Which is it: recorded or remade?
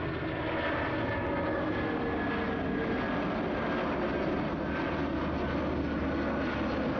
recorded